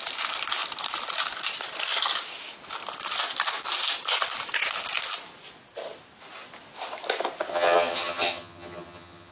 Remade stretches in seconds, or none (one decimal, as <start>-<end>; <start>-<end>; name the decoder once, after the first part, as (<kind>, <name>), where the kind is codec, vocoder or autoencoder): 7.5-9.3 (vocoder, HiFi-GAN)